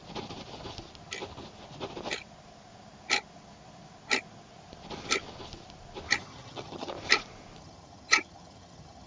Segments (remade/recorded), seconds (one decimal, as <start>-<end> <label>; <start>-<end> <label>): 0.0-6.2 recorded; 6.2-6.9 remade; 6.9-7.6 recorded; 7.6-9.1 remade